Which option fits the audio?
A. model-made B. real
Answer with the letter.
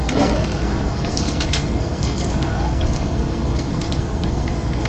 A